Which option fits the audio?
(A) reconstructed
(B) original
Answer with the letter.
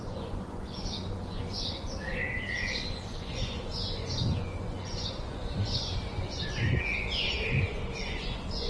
A